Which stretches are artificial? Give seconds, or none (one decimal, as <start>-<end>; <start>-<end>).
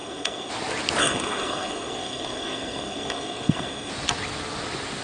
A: 0.0-0.5; 1.0-3.9